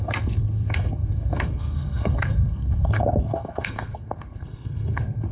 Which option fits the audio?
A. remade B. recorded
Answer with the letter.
A